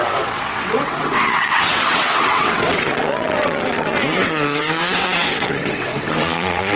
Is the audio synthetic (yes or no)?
yes